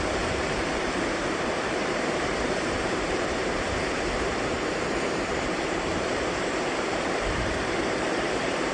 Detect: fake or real fake